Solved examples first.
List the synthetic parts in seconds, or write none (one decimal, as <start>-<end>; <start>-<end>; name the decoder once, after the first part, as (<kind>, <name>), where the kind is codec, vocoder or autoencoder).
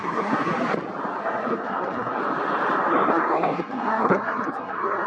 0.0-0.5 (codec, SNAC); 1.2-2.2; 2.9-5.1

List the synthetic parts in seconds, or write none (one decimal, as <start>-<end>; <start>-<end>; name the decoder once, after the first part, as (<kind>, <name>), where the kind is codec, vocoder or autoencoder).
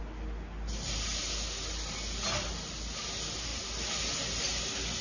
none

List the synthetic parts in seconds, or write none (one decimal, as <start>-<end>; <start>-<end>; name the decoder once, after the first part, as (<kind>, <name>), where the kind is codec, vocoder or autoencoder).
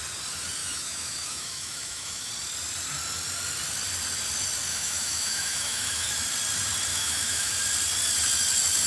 0.6-2.3 (autoencoder, DAC-VAE); 4.7-6.1; 6.9-7.5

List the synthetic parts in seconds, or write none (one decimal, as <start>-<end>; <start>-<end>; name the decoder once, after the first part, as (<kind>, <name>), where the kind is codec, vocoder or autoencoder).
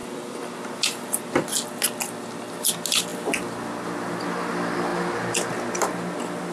none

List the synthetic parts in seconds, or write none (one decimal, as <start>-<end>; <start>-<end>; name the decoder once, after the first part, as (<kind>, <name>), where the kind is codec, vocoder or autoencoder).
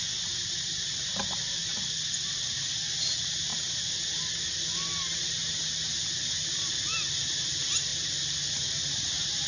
none